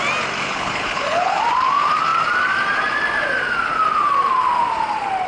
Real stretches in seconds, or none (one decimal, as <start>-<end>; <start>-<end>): 0.0-0.4; 1.4-5.3

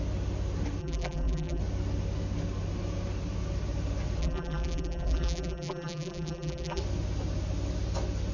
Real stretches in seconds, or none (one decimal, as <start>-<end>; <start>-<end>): 0.0-0.8; 1.6-4.2; 6.8-8.3

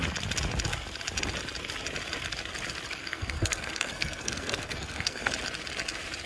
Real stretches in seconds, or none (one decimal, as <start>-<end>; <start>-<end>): 0.0-3.0; 5.3-6.3

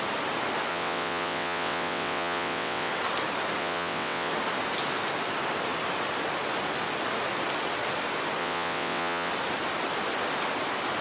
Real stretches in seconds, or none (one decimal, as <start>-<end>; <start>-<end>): 0.0-0.7; 2.9-3.6; 4.3-8.4; 9.3-11.0

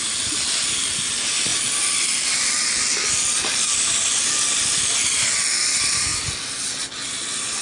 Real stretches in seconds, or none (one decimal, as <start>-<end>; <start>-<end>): 0.0-7.6

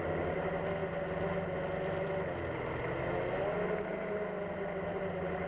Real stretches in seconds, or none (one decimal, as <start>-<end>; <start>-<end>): 0.0-5.5